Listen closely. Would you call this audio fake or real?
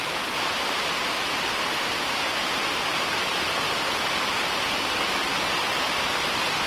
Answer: real